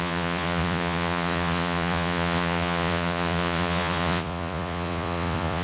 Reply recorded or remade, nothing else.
remade